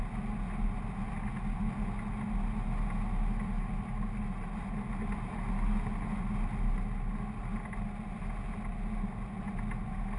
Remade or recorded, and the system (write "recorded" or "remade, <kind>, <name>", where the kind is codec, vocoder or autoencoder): recorded